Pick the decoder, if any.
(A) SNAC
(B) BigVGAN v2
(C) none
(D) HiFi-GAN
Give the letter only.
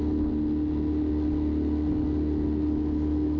C